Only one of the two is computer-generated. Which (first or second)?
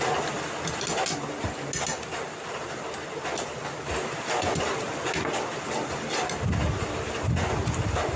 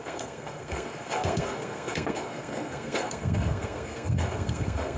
second